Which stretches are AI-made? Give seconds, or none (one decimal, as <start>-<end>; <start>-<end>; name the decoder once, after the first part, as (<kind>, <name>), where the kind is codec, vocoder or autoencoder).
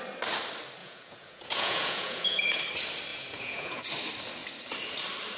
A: 0.8-2.6 (vocoder, Vocos); 3.1-3.9